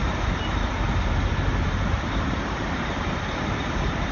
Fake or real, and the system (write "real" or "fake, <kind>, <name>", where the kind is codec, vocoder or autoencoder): fake, vocoder, BigVGAN v2